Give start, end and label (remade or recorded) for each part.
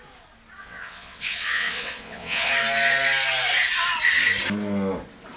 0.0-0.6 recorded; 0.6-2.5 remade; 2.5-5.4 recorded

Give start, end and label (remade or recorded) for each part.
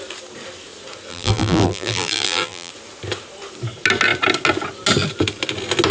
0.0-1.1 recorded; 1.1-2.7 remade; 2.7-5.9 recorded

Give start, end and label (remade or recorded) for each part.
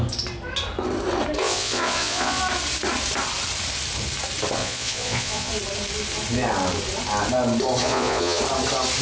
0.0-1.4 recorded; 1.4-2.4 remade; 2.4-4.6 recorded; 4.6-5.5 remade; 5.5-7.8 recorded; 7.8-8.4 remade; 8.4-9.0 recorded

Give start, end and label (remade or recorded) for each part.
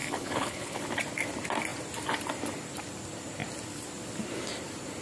0.0-0.8 remade; 0.8-5.0 recorded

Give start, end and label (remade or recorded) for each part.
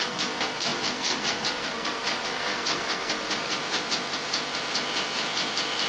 0.0-3.6 remade; 3.6-5.9 recorded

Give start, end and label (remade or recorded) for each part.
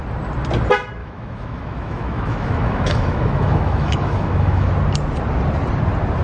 0.0-1.0 recorded; 1.0-4.7 remade; 4.7-6.2 recorded